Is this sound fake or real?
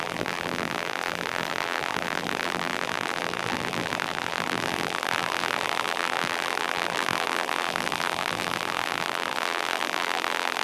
fake